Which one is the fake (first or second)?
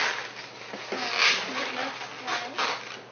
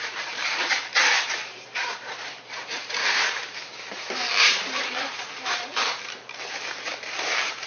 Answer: second